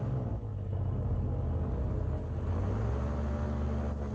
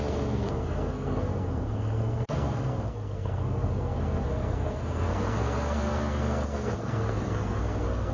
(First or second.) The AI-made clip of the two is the second